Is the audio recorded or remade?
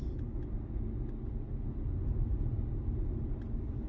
recorded